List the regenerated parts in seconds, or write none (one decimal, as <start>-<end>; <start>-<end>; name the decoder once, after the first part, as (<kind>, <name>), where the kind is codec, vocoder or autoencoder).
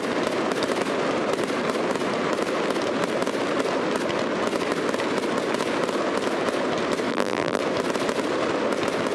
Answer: 7.1-7.6 (vocoder, BigVGAN v2)